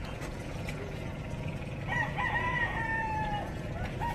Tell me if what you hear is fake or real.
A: fake